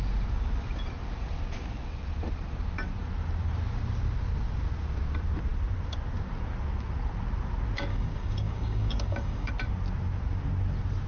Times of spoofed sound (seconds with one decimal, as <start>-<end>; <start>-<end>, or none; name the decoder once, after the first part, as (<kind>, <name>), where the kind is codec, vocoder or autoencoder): 7.9-9.5 (codec, DAC)